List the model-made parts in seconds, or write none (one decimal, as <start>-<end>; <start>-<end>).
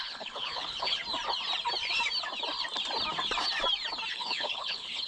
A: 0.0-1.0; 4.1-5.1